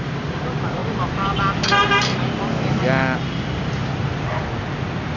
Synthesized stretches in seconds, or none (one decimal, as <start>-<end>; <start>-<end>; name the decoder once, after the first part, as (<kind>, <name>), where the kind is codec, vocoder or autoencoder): none